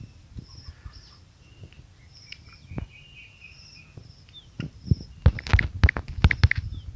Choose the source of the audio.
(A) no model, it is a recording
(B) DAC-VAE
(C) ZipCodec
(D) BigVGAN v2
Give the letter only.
A